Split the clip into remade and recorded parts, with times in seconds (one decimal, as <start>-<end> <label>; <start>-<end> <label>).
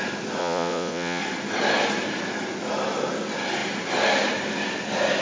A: 0.0-0.4 recorded; 0.4-1.2 remade; 1.2-5.2 recorded